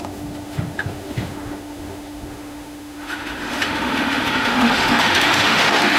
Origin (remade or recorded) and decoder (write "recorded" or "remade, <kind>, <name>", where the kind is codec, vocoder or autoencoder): remade, autoencoder, DAC-VAE